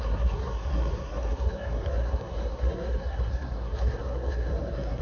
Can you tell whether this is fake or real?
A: fake